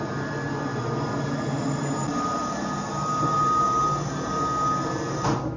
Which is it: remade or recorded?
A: recorded